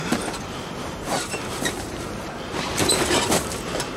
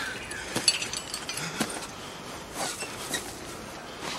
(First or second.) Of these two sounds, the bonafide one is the second